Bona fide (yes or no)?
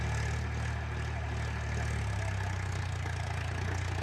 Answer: yes